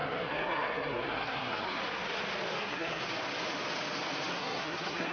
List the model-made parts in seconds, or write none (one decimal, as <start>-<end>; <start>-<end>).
0.0-1.8; 2.6-3.0; 4.3-5.1

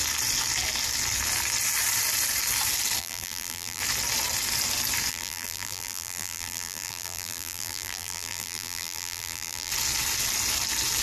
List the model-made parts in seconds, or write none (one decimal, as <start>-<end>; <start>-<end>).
3.0-3.8; 5.1-9.7

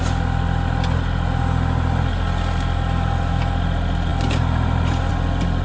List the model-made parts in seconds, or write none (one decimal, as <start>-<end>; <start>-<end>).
none

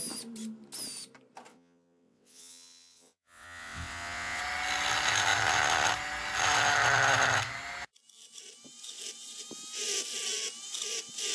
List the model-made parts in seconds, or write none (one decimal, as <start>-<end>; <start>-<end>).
1.5-4.4

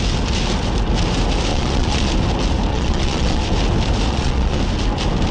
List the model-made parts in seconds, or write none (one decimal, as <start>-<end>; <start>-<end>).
1.5-2.1; 2.7-3.4; 4.1-4.6

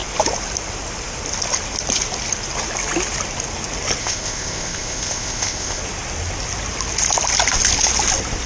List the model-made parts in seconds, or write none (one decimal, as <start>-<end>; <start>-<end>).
4.0-5.8

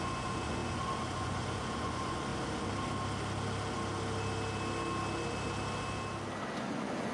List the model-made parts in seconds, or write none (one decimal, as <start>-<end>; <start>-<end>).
0.0-2.3; 6.6-7.1

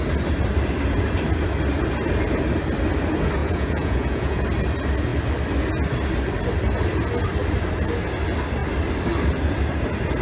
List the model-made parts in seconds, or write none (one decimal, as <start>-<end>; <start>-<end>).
3.4-4.4